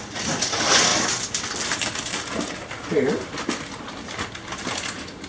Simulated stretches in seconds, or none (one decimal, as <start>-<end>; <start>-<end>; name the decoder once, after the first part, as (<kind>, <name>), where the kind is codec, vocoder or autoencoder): 0.9-4.1 (vocoder, BigVGAN v2)